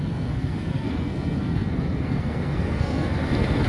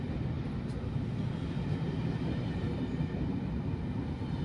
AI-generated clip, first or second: first